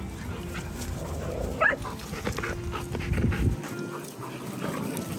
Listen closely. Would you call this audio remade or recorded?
recorded